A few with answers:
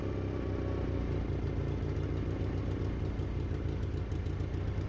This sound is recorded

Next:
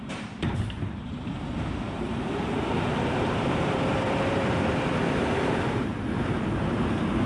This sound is remade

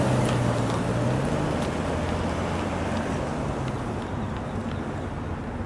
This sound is recorded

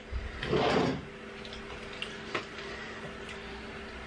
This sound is recorded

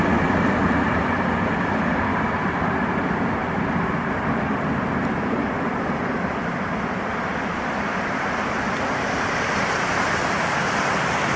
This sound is recorded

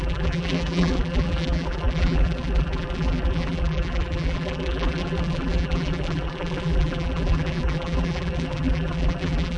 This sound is remade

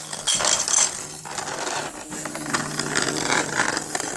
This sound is recorded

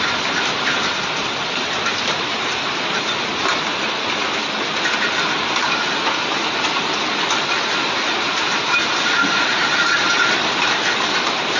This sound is remade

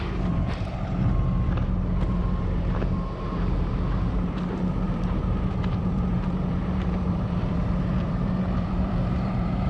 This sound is remade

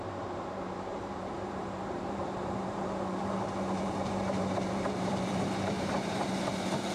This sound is remade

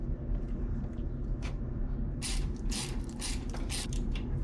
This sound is remade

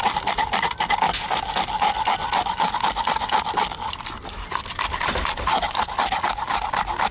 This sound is recorded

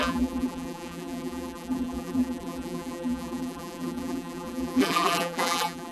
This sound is remade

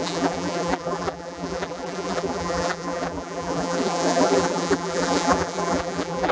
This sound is remade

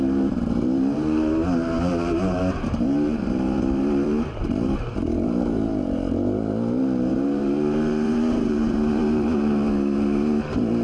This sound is remade